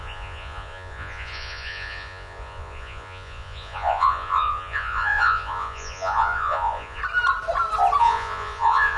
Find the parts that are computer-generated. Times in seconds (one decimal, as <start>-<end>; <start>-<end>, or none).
0.0-7.0; 8.0-9.0